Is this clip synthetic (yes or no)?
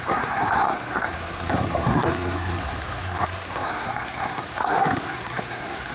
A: yes